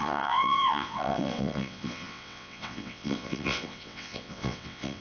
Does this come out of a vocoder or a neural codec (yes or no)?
yes